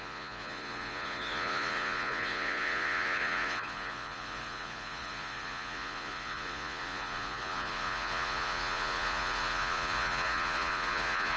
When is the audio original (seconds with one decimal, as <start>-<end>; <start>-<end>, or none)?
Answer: none